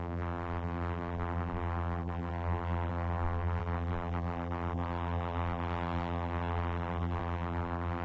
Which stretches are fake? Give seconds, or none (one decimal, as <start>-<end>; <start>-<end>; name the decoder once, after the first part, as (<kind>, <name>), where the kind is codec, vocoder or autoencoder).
0.0-8.0 (vocoder, BigVGAN v2)